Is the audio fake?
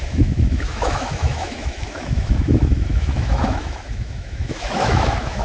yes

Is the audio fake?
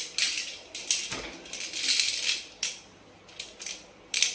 no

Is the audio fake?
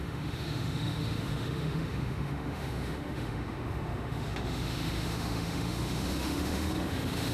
yes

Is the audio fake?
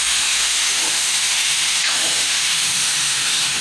yes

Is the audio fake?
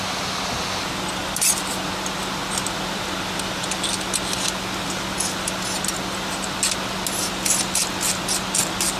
no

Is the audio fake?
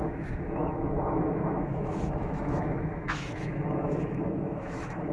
yes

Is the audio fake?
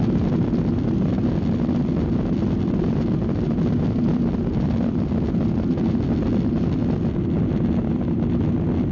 no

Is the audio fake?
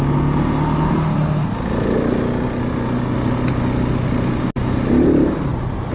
no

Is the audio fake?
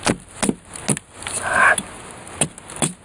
no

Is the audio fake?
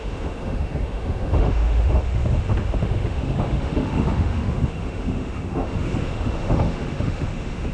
yes